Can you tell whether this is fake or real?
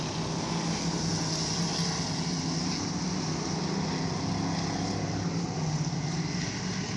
real